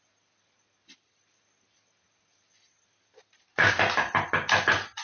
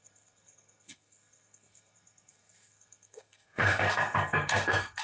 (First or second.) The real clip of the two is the first